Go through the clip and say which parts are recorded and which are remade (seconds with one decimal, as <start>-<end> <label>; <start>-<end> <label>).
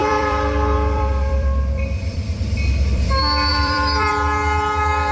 0.0-3.1 remade; 3.1-3.5 recorded; 3.5-4.1 remade; 4.1-5.1 recorded